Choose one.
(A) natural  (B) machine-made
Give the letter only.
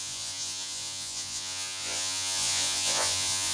B